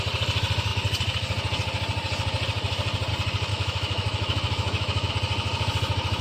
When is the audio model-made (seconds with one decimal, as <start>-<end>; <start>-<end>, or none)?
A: 3.5-5.1